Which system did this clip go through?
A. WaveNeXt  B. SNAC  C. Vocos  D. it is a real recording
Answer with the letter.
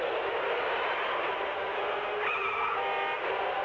D